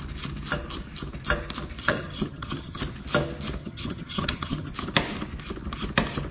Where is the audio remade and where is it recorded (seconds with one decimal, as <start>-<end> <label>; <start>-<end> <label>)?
0.0-1.8 recorded; 1.8-2.8 remade; 2.8-3.6 recorded; 3.6-4.7 remade; 4.7-6.3 recorded